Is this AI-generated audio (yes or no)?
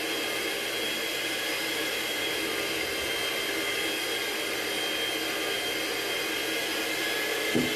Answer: no